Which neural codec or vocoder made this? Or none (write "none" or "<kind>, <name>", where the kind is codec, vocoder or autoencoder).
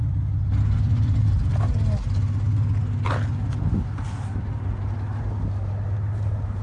none